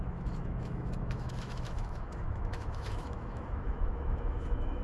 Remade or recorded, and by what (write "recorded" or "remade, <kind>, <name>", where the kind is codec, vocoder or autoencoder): remade, autoencoder, DAC-VAE